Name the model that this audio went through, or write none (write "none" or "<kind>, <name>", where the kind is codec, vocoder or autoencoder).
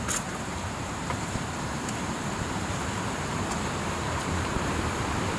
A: vocoder, BigVGAN v2